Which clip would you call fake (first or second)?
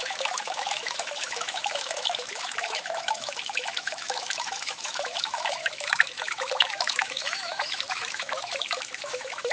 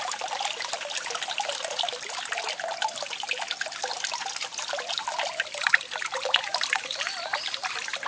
first